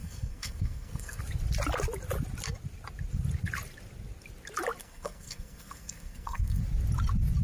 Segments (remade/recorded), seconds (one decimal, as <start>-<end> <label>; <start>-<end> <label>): 0.0-1.2 remade; 1.2-4.8 recorded; 4.8-6.6 remade; 6.6-7.4 recorded